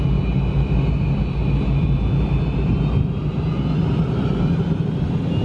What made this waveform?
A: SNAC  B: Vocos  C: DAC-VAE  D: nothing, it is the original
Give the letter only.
D